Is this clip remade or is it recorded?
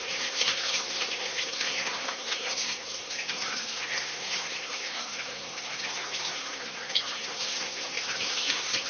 remade